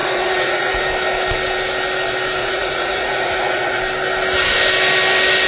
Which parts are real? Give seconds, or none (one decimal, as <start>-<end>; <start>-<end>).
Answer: 0.8-2.4; 3.8-5.5